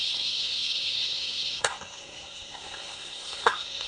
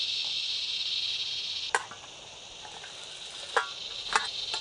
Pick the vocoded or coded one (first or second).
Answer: first